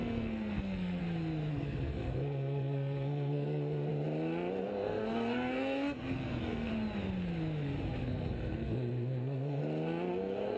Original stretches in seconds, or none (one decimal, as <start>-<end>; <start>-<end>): 1.0-1.5; 3.9-4.6; 6.7-8.0; 9.6-10.1